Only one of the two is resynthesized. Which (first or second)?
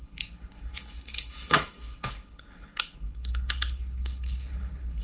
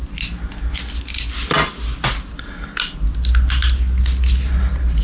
first